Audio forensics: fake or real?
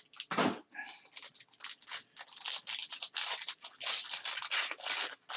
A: real